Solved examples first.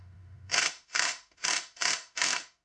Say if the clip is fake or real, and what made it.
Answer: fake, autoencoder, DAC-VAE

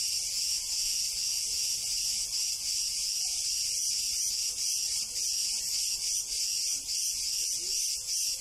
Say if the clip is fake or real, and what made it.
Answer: real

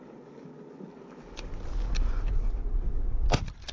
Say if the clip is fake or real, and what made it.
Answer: real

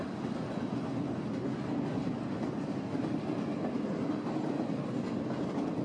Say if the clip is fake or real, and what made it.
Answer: real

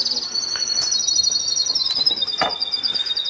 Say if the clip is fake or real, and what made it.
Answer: real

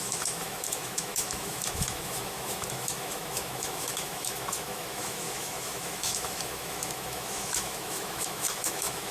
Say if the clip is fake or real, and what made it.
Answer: fake, autoencoder, DAC-VAE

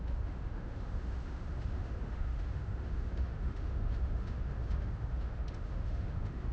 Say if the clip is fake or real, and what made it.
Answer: fake, autoencoder, DAC-VAE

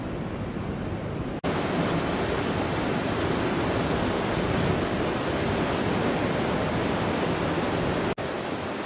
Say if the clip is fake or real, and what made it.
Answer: real